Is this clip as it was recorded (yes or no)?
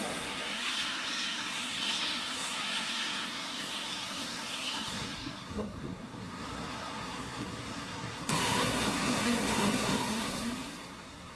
no